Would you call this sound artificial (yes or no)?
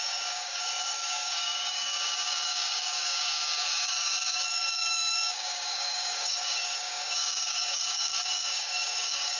yes